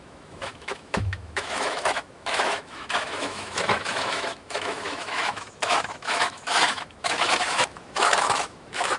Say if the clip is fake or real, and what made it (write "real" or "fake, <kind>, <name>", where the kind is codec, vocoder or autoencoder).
fake, autoencoder, DAC-VAE